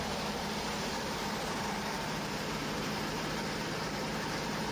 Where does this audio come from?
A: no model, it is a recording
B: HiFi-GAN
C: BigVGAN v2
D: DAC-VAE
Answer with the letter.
C